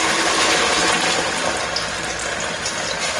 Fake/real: real